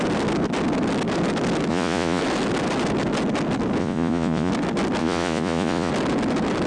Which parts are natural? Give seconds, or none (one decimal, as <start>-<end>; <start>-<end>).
0.0-1.7; 2.2-3.8; 4.5-5.0; 5.9-6.7